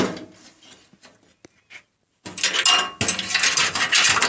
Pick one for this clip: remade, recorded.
recorded